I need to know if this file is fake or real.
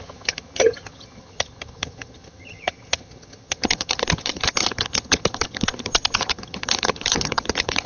fake